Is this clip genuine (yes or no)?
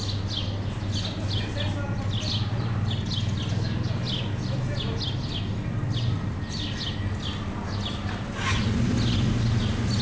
yes